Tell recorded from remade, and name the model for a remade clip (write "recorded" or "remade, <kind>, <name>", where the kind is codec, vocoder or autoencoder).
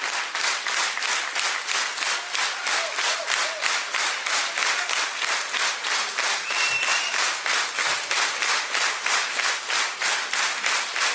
recorded